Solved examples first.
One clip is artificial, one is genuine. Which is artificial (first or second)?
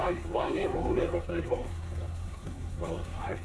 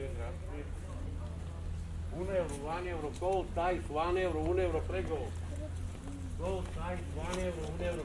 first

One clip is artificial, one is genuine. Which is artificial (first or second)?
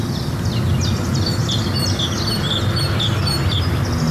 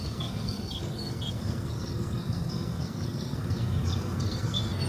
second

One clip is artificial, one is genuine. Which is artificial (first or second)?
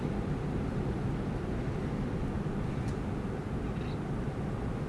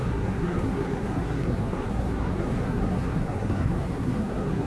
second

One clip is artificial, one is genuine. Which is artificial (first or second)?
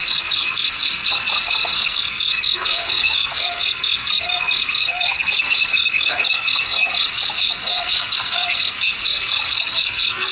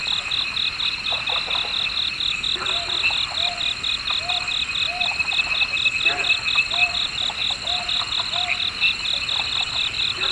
first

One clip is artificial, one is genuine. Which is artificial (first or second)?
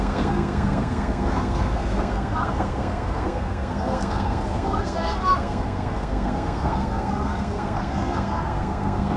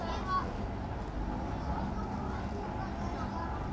first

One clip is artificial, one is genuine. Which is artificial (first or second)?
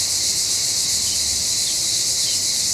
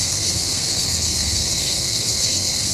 second